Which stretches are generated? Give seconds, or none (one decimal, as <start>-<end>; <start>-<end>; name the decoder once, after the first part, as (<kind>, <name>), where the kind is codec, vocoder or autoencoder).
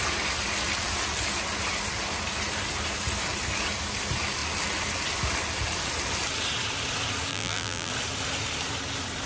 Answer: 7.3-7.9 (vocoder, BigVGAN v2)